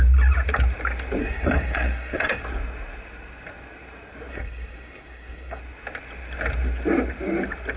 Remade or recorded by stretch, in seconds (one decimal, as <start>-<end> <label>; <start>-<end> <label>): 0.0-1.2 recorded; 1.2-2.4 remade; 2.4-4.3 recorded; 4.3-5.6 remade; 5.6-7.8 recorded